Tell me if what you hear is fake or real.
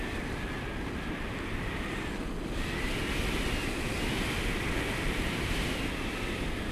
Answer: real